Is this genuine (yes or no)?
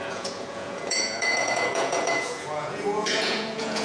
no